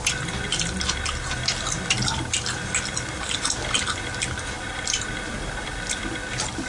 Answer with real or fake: real